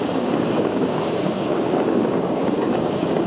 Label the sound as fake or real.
fake